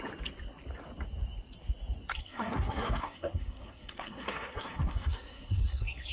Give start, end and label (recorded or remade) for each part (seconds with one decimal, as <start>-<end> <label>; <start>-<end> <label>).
0.0-2.1 recorded; 2.1-6.1 remade